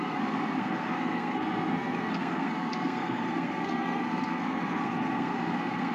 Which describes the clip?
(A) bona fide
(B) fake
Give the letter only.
B